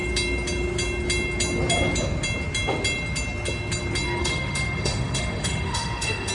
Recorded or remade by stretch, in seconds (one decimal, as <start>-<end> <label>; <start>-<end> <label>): 0.0-4.2 recorded; 4.2-6.3 remade